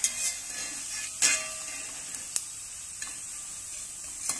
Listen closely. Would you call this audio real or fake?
real